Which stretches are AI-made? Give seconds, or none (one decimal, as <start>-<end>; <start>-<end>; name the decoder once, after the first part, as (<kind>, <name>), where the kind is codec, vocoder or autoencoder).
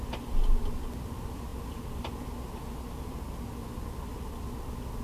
none